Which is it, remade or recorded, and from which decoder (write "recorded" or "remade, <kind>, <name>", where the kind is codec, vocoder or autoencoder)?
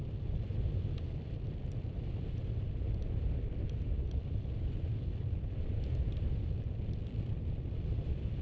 recorded